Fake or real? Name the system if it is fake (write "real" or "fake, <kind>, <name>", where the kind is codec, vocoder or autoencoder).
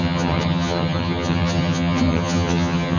fake, vocoder, HiFi-GAN